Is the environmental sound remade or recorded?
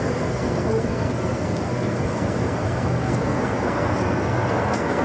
remade